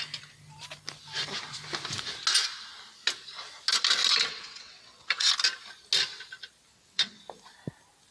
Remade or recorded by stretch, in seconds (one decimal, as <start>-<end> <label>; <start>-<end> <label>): 0.0-4.3 recorded; 4.3-5.3 remade; 5.3-6.7 recorded; 6.7-7.2 remade; 7.2-8.1 recorded